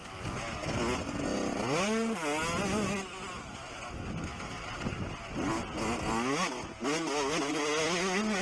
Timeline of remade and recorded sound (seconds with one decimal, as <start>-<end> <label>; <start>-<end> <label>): 0.0-4.3 recorded; 4.3-5.2 remade; 5.2-8.4 recorded